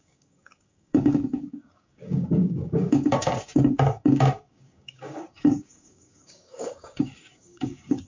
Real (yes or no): no